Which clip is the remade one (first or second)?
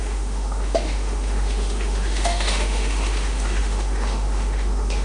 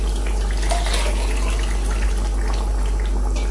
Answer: first